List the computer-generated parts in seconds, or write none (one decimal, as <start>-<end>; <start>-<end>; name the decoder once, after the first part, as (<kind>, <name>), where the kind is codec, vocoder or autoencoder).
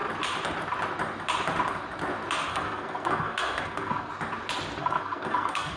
2.5-4.1 (codec, SNAC); 4.8-5.8